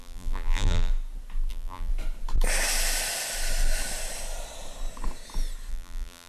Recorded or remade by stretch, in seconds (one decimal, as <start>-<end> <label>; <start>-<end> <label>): 0.0-0.9 remade; 0.9-1.5 recorded; 1.5-1.9 remade; 1.9-5.7 recorded; 5.7-6.3 remade